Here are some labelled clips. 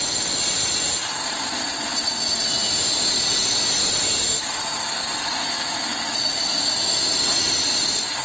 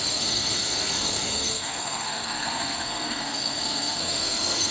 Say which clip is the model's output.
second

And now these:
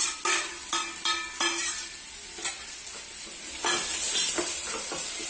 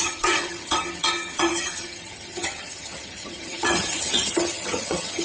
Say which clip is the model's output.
second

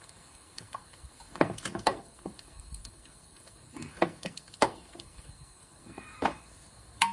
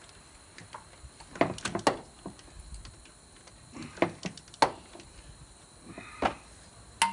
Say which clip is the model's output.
first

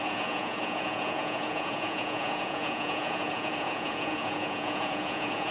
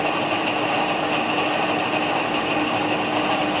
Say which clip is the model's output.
first